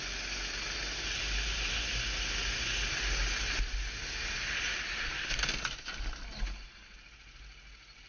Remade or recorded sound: recorded